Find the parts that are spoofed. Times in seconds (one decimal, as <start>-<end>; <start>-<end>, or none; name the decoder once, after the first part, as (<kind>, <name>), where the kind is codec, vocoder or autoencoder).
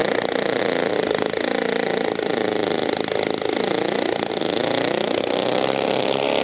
none